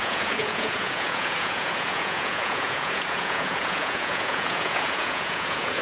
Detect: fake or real fake